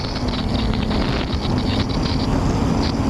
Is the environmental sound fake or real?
real